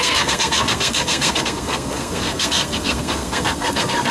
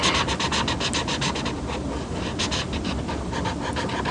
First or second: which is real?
second